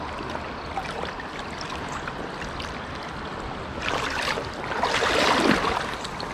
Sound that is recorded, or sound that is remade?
recorded